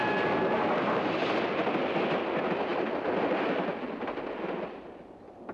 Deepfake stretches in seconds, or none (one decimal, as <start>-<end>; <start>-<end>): none